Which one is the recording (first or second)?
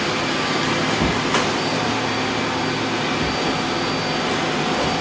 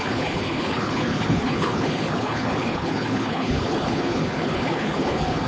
first